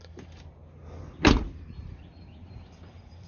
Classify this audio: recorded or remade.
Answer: recorded